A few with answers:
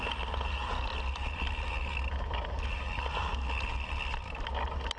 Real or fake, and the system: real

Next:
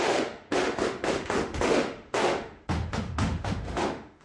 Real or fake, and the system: fake, autoencoder, DAC-VAE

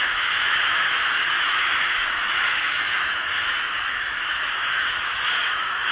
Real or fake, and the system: fake, autoencoder, DAC-VAE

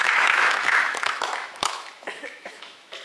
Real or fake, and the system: fake, autoencoder, DAC-VAE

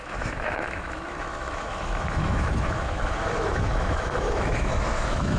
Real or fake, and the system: fake, autoencoder, DAC-VAE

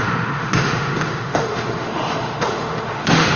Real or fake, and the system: fake, autoencoder, DAC-VAE